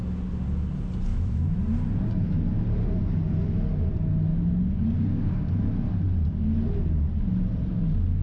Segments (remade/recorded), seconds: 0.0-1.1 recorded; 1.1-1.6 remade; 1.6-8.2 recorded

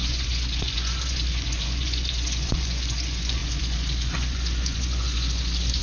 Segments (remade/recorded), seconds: 0.0-5.8 remade

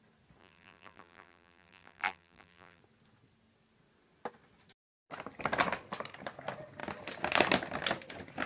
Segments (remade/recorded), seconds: 0.0-0.4 recorded; 0.4-2.8 remade; 2.8-8.5 recorded

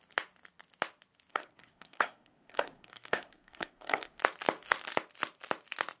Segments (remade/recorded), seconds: 0.0-1.3 recorded; 1.3-4.2 remade; 4.2-6.0 recorded

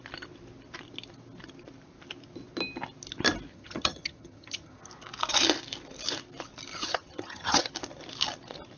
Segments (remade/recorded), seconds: 0.0-3.5 recorded; 3.5-4.8 remade; 4.8-6.7 recorded; 6.7-7.7 remade; 7.7-8.8 recorded